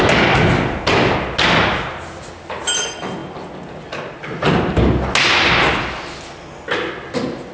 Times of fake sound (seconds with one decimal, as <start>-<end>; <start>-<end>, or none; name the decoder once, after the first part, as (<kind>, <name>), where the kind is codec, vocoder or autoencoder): none